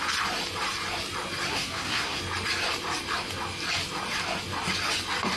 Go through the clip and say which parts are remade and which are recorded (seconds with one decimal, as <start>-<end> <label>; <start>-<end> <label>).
0.0-1.5 recorded; 1.5-2.2 remade; 2.2-5.4 recorded